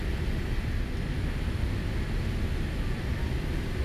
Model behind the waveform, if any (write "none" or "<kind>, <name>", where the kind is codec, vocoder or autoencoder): none